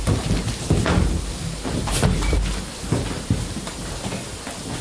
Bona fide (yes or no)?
yes